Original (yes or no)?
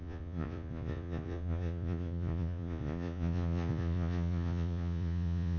no